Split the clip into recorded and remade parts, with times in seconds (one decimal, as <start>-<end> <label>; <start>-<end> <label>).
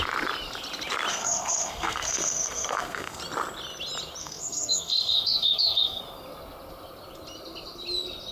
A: 0.0-1.1 recorded; 1.1-3.2 remade; 3.2-4.2 recorded; 4.2-6.0 remade; 6.0-8.3 recorded